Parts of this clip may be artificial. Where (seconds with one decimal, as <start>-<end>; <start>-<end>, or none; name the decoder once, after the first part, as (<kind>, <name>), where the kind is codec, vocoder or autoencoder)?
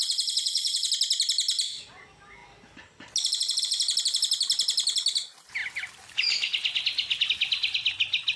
0.0-0.9 (vocoder, Vocos)